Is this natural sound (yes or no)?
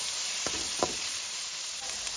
no